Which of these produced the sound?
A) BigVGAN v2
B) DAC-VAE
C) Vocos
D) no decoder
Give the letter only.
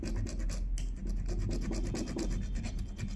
D